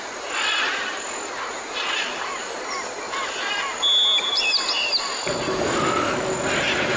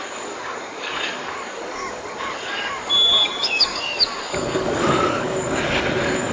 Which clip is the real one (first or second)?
first